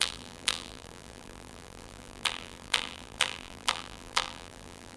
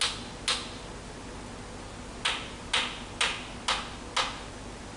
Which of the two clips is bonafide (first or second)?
second